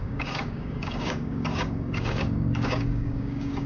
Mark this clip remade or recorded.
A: remade